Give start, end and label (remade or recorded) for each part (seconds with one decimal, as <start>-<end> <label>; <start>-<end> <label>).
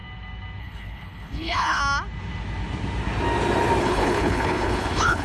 0.0-0.6 recorded; 0.6-1.8 remade; 1.8-3.8 recorded; 3.8-5.2 remade